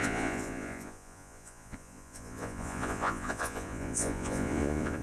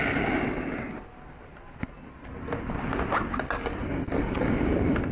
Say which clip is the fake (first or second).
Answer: first